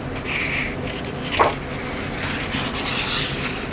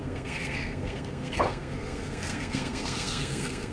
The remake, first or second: second